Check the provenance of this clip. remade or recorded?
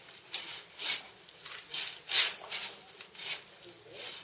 recorded